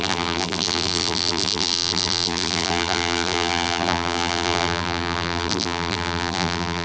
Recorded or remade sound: remade